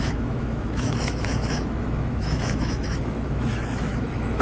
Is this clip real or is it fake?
fake